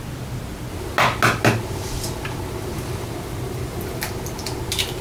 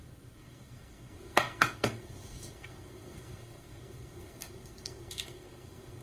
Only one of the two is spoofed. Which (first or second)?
second